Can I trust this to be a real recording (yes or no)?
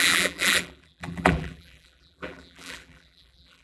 no